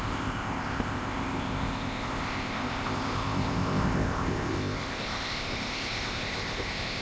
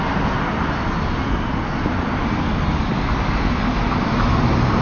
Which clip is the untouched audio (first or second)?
second